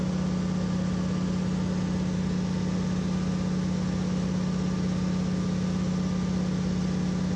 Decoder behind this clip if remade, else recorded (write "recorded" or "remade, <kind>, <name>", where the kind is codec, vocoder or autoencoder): recorded